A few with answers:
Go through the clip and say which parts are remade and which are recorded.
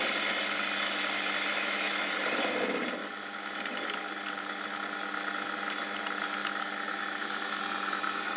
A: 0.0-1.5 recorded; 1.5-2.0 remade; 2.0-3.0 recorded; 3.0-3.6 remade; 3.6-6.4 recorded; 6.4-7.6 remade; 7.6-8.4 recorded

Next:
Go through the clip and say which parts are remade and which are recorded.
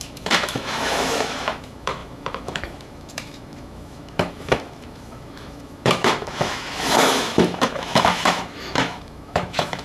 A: 0.0-9.8 remade